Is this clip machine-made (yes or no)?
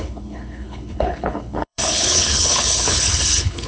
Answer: yes